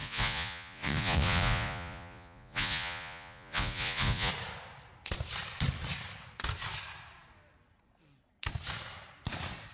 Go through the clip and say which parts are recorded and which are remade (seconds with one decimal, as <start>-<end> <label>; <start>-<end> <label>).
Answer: 0.0-4.3 remade; 4.3-9.7 recorded